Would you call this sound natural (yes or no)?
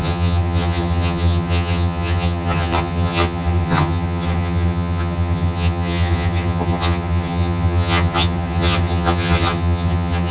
no